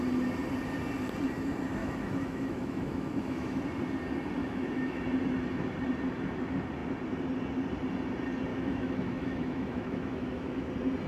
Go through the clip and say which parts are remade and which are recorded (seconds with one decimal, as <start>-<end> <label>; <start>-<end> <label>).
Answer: 0.0-1.8 recorded; 1.8-3.6 remade; 3.6-4.4 recorded; 4.4-5.0 remade; 5.0-8.5 recorded; 8.5-10.7 remade; 10.7-11.1 recorded